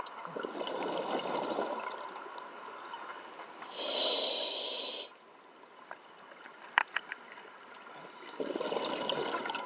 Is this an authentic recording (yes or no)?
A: yes